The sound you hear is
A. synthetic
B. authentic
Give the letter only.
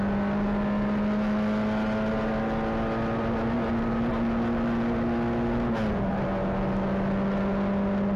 B